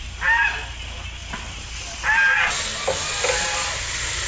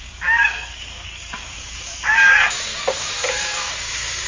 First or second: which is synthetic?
second